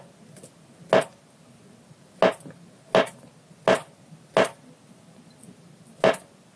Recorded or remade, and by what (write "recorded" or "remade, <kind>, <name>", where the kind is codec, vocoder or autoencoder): recorded